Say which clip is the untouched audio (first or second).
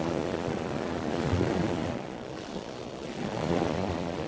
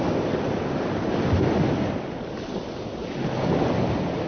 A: second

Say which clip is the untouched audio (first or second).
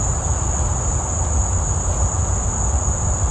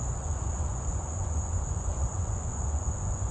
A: first